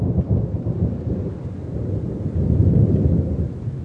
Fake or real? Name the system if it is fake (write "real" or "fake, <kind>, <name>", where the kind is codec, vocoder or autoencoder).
real